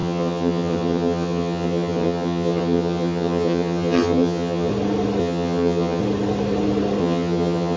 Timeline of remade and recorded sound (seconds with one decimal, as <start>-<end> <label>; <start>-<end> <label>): 0.0-4.7 remade; 4.7-5.2 recorded; 5.2-6.0 remade; 6.0-7.0 recorded; 7.0-7.8 remade